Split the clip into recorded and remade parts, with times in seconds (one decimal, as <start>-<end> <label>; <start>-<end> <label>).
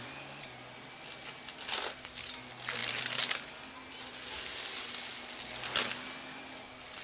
0.0-7.0 recorded